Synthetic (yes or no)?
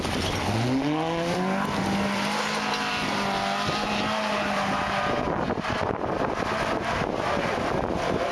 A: no